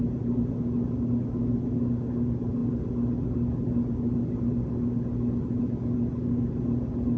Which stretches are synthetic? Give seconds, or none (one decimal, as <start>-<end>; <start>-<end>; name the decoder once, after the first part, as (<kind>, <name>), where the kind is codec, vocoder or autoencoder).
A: none